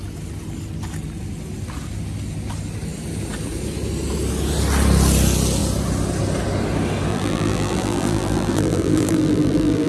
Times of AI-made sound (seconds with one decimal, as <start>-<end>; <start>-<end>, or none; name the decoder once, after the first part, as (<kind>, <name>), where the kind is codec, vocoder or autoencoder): 7.1-9.9 (vocoder, BigVGAN v2)